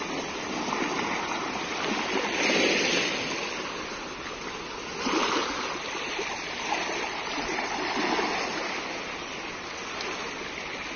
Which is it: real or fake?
real